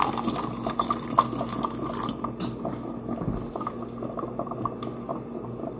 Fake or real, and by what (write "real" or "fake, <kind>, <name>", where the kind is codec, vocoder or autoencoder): real